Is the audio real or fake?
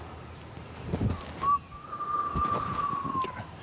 real